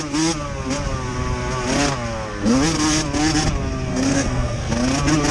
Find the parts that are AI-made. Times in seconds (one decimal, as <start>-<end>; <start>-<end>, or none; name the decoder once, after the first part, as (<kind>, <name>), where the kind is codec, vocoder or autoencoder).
3.9-4.7 (codec, SNAC)